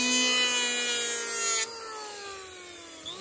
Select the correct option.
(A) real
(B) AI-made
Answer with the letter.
A